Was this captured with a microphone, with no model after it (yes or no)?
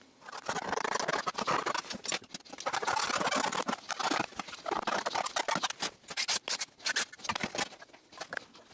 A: yes